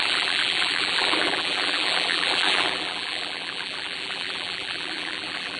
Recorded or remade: remade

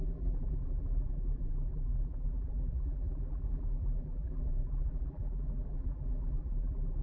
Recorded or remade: remade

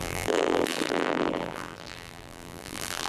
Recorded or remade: remade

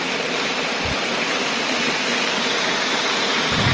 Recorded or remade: recorded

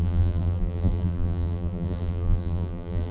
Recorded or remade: remade